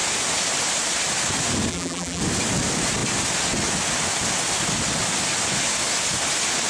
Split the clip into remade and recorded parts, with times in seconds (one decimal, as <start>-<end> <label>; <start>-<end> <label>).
0.0-1.7 recorded; 1.7-2.2 remade; 2.2-6.7 recorded